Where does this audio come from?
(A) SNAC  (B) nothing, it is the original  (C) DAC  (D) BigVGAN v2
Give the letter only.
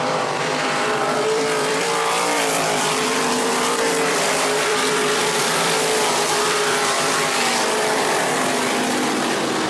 D